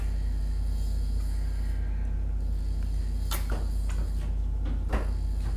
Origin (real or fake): real